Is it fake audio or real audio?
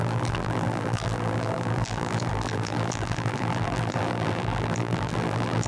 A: fake